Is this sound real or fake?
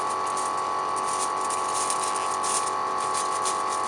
real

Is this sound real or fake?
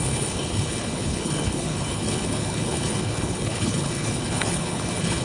fake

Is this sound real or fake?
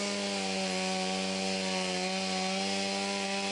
real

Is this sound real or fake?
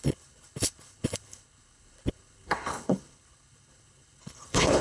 fake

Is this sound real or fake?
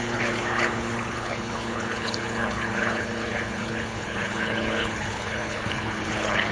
fake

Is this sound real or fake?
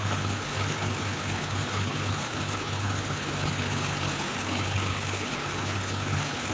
fake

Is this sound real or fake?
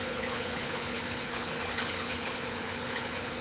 fake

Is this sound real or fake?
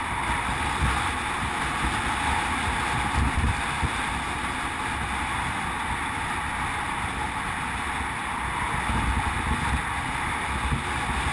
real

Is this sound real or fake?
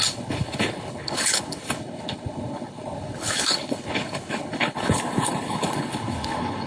fake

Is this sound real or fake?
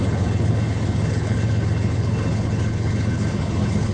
fake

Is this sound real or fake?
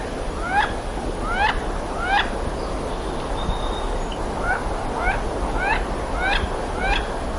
real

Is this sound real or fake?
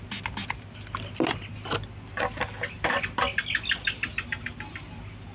real